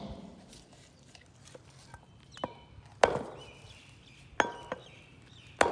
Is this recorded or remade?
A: recorded